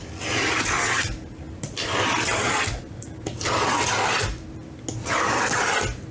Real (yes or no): yes